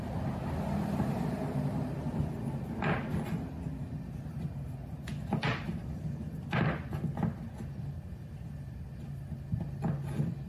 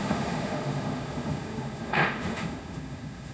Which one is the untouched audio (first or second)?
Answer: first